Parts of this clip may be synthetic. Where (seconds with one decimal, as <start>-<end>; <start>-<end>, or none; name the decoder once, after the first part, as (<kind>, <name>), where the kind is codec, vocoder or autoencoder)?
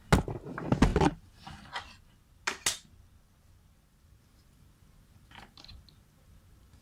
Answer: none